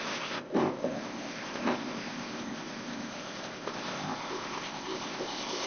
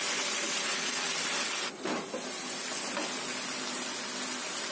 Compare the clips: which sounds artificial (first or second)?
first